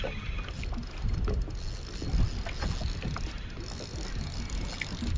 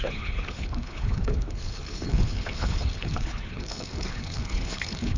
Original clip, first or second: first